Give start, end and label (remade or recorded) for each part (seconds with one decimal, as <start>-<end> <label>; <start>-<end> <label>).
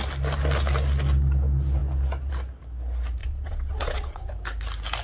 0.0-3.2 recorded; 3.2-4.3 remade; 4.3-5.0 recorded